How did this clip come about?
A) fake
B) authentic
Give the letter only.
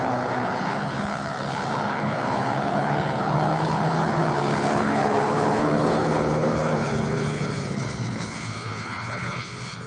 A